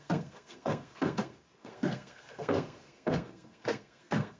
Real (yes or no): no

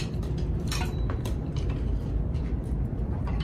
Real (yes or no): no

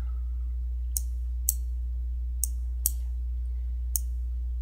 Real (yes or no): yes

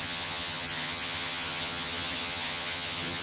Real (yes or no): no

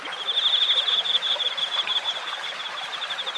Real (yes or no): yes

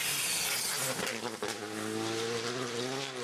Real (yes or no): yes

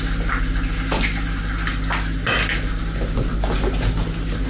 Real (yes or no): yes